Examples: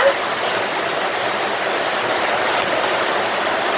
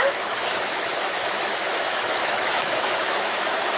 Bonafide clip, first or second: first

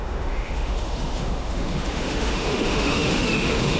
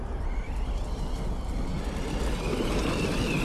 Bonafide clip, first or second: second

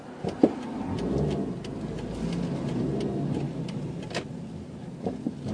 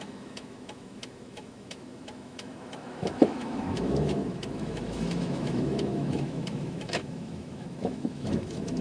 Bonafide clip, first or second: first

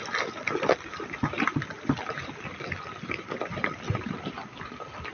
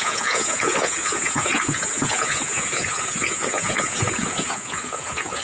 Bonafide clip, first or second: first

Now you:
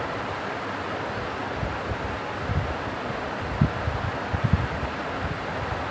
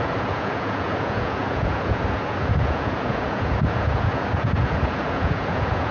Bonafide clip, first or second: first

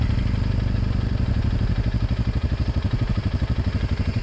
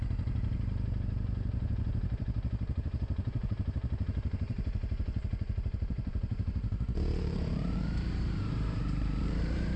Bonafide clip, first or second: first